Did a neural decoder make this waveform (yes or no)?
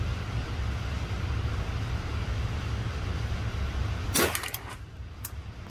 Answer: no